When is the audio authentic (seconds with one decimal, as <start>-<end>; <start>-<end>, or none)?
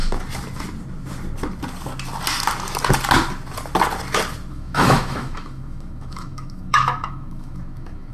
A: 0.0-4.5